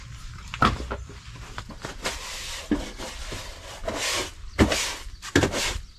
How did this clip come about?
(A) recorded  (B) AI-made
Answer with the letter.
A